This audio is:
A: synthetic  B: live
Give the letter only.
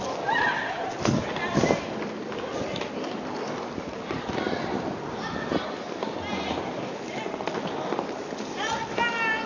B